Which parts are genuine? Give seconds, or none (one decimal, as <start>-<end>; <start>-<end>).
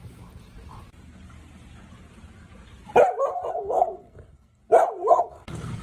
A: 0.0-3.5; 4.6-5.2